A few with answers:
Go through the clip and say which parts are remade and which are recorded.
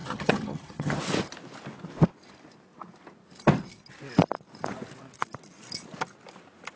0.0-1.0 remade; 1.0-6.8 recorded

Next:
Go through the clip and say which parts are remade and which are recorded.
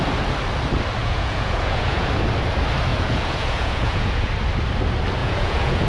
0.0-1.0 recorded; 1.0-2.1 remade; 2.1-2.9 recorded; 2.9-4.3 remade; 4.3-5.2 recorded; 5.2-5.9 remade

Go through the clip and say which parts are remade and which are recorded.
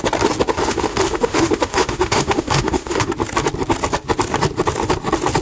0.0-0.6 recorded; 0.6-3.1 remade; 3.1-5.4 recorded